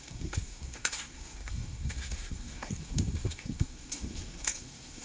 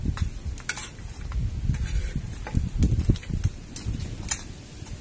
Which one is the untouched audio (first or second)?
second